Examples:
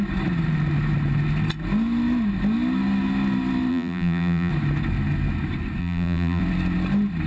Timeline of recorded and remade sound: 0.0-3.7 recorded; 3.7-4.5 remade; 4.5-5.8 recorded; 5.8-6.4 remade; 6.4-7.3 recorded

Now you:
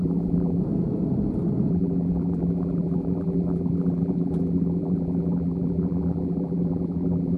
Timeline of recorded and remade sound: 0.0-0.6 remade; 0.6-1.7 recorded; 1.7-7.4 remade

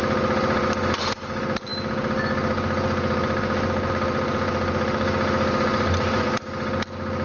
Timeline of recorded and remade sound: 0.0-7.2 recorded

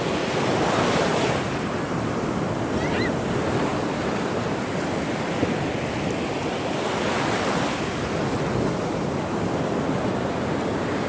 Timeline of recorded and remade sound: 0.0-11.1 remade

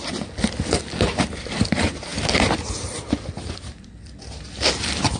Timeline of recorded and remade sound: 0.0-5.2 recorded

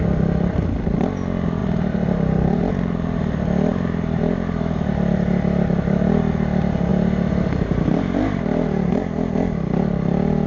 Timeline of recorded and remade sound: 0.0-1.6 recorded; 1.6-2.7 remade; 2.7-3.7 recorded; 3.7-6.1 remade; 6.1-6.9 recorded; 6.9-8.9 remade; 8.9-10.5 recorded

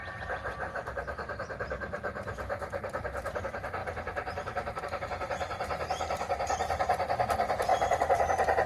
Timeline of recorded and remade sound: 0.0-3.4 remade; 3.4-7.7 recorded; 7.7-8.7 remade